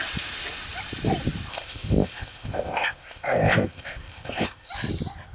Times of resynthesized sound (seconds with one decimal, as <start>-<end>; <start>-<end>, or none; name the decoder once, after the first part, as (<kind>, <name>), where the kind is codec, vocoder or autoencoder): 1.5-4.7 (codec, ZipCodec)